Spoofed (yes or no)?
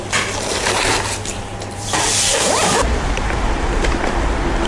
yes